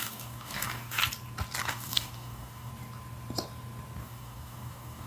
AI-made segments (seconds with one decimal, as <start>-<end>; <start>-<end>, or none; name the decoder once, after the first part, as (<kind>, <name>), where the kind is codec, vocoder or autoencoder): 0.0-1.0 (codec, DAC); 1.6-2.7; 4.0-5.1